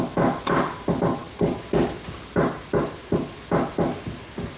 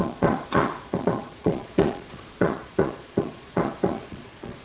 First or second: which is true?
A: first